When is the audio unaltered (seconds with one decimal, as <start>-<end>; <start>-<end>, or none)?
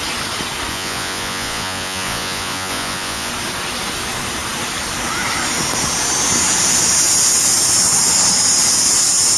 0.0-0.7; 3.3-9.4